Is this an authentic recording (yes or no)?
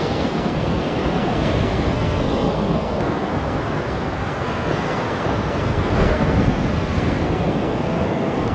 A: no